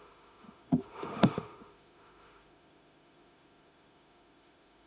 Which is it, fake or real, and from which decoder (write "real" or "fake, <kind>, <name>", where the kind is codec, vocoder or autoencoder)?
fake, autoencoder, DAC-VAE